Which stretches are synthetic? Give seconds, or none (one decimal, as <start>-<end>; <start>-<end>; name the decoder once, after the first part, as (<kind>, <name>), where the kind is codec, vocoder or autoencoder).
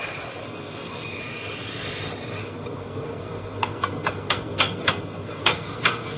0.4-1.2 (codec, SNAC); 2.4-6.2